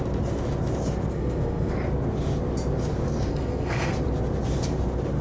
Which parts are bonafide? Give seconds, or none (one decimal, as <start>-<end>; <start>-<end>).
0.0-1.1; 1.7-3.3; 3.9-5.2